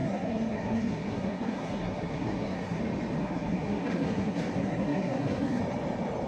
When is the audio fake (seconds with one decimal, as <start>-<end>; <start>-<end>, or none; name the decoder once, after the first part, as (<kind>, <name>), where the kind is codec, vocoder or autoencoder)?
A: 0.0-2.8 (codec, SNAC); 3.2-5.6